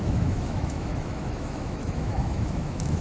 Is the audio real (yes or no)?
no